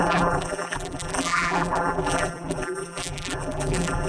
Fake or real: fake